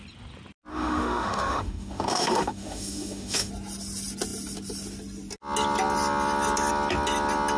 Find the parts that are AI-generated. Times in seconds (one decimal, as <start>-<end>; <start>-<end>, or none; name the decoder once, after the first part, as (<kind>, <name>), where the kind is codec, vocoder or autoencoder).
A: 0.7-3.5 (autoencoder, DAC-VAE)